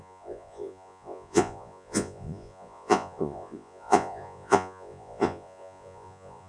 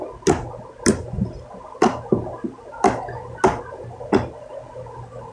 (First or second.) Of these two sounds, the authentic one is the second